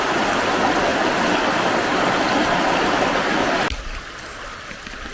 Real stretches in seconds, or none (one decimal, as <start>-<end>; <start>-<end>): 0.0-5.1